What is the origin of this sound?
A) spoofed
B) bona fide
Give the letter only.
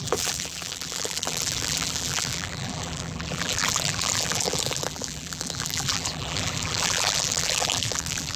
A